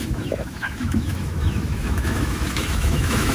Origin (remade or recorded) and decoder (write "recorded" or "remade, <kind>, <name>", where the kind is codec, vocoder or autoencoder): remade, autoencoder, DAC-VAE